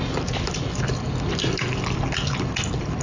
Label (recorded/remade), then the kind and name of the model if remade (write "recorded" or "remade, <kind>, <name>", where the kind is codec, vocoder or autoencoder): recorded